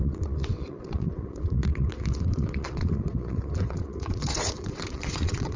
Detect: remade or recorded remade